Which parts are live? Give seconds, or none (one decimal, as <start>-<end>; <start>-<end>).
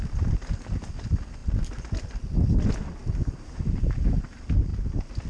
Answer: 0.0-5.3